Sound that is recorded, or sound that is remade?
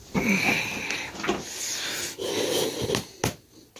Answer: recorded